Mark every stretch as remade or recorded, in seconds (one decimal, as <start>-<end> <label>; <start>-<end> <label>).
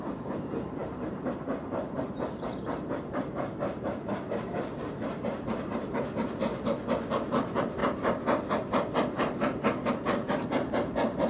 0.0-6.5 remade; 6.5-7.3 recorded; 7.3-7.8 remade; 7.8-9.9 recorded; 9.9-11.3 remade